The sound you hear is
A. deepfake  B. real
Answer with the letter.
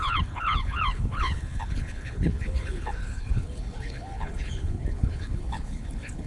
A